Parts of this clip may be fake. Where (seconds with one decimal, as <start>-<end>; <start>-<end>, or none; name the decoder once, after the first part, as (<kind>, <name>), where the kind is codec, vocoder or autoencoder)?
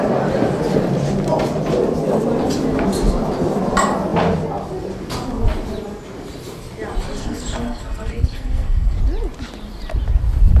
7.1-9.0 (codec, SNAC)